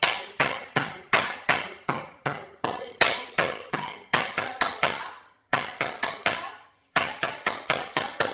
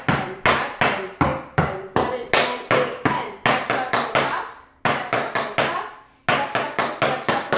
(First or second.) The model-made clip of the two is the first